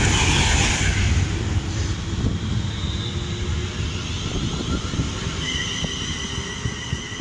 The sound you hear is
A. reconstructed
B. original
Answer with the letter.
B